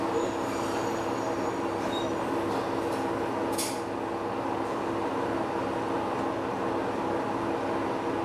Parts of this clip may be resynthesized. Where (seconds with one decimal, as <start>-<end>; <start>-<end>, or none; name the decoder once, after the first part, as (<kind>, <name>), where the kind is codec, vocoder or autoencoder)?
none